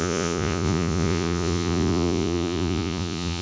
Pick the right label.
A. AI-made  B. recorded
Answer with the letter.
A